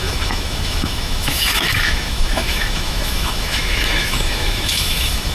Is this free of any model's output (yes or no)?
no